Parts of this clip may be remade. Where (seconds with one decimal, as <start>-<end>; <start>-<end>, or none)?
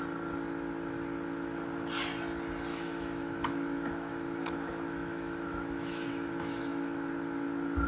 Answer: 2.7-7.1